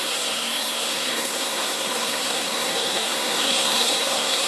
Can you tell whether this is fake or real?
fake